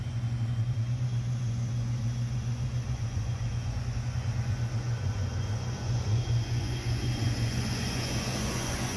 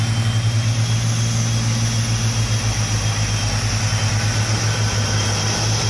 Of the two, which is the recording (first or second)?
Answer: second